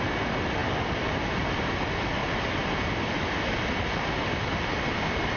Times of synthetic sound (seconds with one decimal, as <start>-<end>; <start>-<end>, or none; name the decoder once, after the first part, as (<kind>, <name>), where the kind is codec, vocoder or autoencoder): none